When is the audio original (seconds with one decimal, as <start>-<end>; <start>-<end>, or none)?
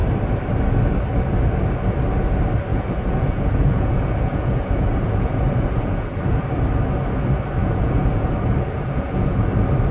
0.0-2.7; 6.5-7.6; 9.5-9.9